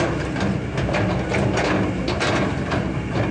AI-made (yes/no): no